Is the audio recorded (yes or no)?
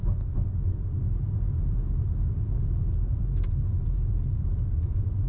yes